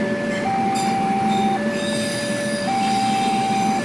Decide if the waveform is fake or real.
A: real